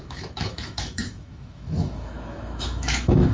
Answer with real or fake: fake